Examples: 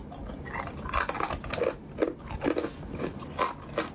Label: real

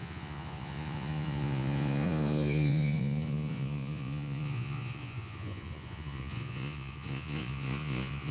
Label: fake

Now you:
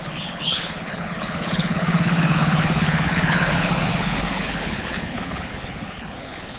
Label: fake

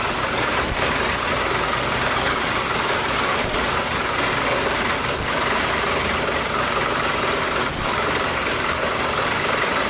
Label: real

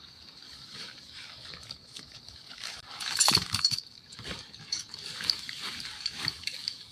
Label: fake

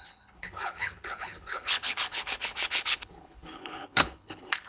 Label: fake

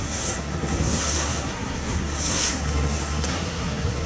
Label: fake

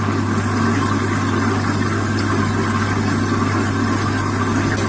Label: real